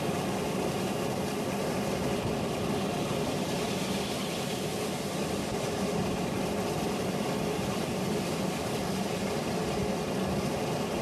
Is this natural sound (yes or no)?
yes